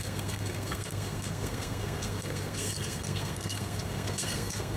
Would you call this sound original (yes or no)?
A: no